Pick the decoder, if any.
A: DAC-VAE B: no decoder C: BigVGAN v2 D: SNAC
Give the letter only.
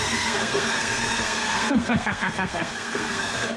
D